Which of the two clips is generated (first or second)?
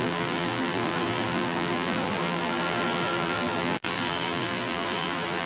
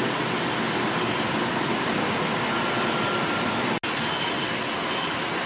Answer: first